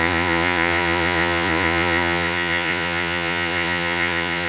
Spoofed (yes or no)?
yes